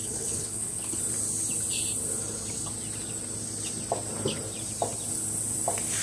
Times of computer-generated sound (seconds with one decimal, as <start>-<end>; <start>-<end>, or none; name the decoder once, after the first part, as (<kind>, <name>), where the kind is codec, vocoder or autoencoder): 0.0-1.0 (codec, HILCodec)

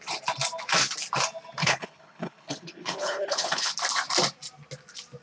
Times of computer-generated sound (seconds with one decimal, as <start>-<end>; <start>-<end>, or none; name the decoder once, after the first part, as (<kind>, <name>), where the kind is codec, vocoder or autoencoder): 1.6-3.7 (codec, HILCodec)

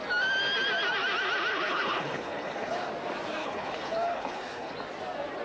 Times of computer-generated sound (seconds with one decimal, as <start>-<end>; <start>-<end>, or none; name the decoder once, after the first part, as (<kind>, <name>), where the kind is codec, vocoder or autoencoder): 1.5-2.9 (codec, HILCodec); 3.4-4.7

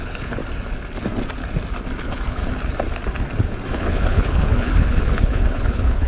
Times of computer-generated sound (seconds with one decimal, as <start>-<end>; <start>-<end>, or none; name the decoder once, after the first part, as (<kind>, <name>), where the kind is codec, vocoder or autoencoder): 0.0-0.4 (codec, HILCodec); 2.0-2.4; 3.7-6.1

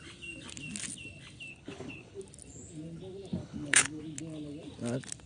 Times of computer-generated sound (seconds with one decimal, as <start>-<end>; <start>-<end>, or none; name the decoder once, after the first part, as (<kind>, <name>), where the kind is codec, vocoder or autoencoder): 1.5-2.2 (codec, HILCodec); 3.4-4.0

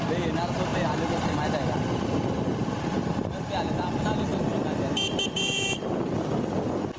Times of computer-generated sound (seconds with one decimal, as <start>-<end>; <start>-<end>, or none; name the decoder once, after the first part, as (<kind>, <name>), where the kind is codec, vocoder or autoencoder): none

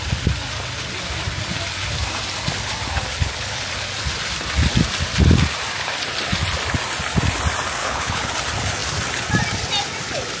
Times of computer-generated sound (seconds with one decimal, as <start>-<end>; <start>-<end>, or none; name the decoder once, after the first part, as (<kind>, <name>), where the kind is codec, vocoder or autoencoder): 3.1-3.7 (codec, HILCodec); 7.8-8.3

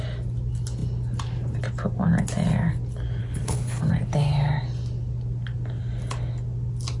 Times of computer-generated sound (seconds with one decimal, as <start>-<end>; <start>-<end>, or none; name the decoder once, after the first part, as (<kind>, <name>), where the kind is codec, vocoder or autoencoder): 3.2-3.8 (codec, HILCodec)